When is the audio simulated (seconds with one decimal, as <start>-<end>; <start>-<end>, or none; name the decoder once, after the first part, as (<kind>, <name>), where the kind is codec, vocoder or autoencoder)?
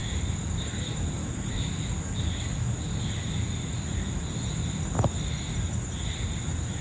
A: none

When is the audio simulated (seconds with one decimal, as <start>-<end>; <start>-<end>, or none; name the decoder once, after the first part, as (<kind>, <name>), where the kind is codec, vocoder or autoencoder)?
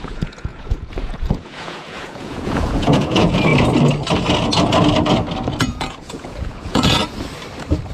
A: 0.0-3.5 (vocoder, Vocos); 5.6-7.0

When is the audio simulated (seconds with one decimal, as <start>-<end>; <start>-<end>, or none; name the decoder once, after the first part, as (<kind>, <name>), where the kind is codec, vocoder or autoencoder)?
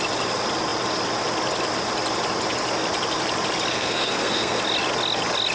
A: 3.7-4.6 (codec, SNAC)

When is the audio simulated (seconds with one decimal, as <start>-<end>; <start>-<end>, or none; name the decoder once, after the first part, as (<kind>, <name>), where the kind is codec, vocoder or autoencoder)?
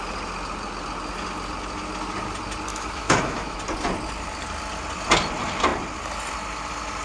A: 2.7-3.6 (autoencoder, DAC-VAE)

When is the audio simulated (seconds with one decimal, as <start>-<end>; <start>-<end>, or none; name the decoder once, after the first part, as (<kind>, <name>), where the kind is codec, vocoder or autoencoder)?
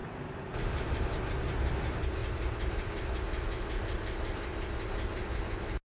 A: 0.0-1.3 (vocoder, BigVGAN v2)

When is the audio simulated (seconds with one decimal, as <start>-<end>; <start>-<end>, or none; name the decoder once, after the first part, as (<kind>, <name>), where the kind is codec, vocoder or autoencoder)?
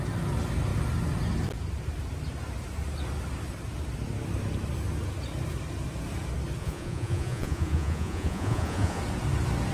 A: 6.6-9.0 (vocoder, Vocos)